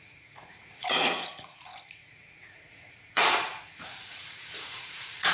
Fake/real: fake